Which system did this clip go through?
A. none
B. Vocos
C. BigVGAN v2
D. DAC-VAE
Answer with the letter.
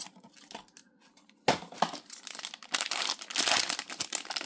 A